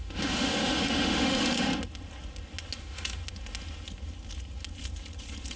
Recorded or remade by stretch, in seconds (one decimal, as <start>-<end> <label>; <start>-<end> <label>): 0.0-1.7 remade; 1.7-2.8 recorded; 2.8-3.2 remade; 3.2-5.6 recorded